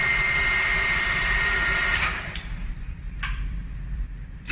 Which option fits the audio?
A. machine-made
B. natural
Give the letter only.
A